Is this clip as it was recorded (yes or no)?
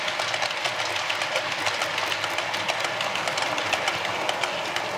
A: yes